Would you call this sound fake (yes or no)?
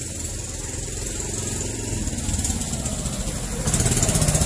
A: no